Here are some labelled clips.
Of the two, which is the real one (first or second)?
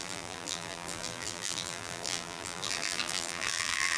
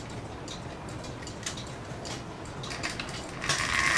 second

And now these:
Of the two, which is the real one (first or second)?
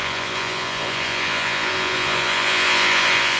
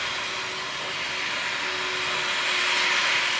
second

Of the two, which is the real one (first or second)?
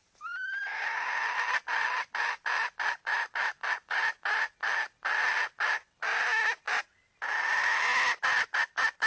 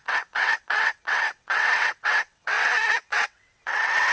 first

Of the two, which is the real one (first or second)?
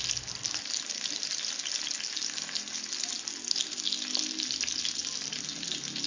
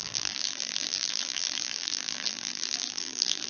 first